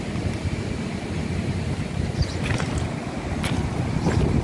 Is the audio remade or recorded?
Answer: recorded